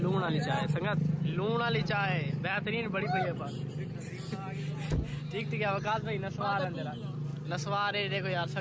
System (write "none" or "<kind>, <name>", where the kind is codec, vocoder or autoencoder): none